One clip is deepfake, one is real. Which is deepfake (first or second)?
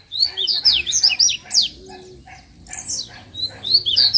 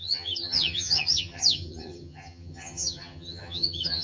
second